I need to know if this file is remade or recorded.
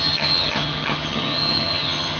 remade